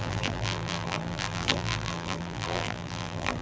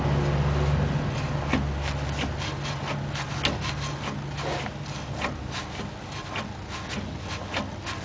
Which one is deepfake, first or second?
first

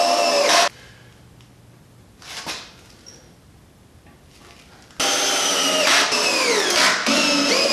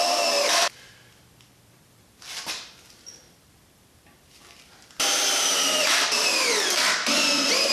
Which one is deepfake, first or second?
second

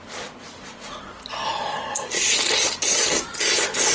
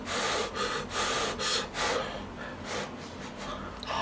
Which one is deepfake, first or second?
first